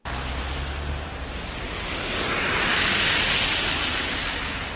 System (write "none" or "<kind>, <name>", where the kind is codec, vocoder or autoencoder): none